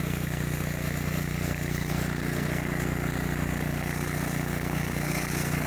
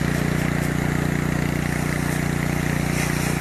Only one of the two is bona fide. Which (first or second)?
second